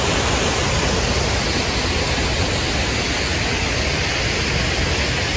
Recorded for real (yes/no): yes